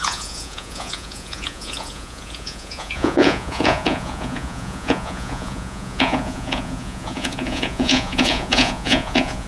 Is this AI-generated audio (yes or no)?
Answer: yes